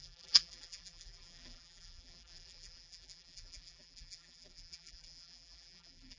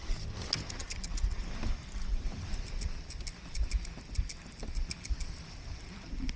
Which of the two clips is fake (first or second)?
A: first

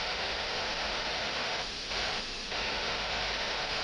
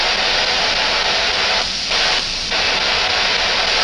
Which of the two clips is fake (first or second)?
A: first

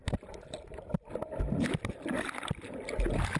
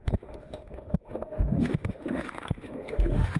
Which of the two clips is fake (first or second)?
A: second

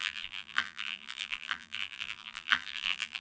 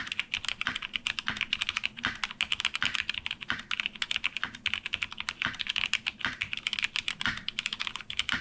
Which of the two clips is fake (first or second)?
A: first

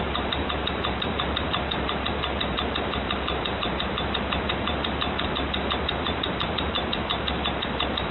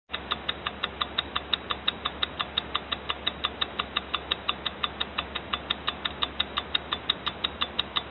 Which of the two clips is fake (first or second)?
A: first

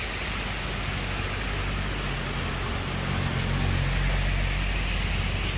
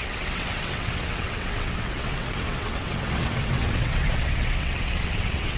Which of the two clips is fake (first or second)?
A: second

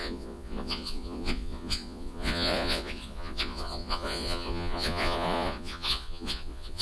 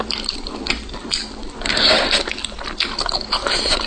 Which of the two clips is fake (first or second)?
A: first